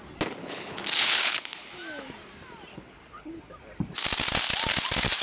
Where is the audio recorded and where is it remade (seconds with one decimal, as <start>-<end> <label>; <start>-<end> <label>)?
0.0-0.4 recorded; 0.4-1.7 remade; 1.7-2.7 recorded; 2.7-3.4 remade; 3.4-5.2 recorded